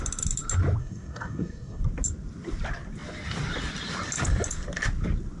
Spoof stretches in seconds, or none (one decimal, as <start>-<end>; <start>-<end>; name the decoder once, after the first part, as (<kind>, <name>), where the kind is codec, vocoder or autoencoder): 0.8-1.8 (codec, SNAC)

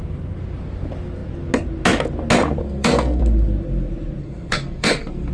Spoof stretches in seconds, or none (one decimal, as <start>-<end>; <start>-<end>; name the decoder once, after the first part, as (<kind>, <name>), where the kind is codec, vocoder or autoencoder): 2.6-3.2 (codec, SNAC); 4.2-5.3

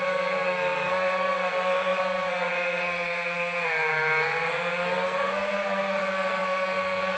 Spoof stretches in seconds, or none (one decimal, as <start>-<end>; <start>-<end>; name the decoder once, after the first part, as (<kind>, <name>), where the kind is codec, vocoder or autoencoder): 0.0-7.2 (codec, SNAC)

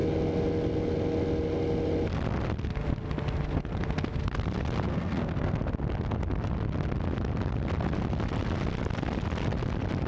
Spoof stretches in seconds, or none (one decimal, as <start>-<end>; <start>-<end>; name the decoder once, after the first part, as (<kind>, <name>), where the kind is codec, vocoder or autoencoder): 4.9-5.6 (codec, SNAC)